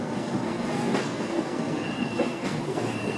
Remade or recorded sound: remade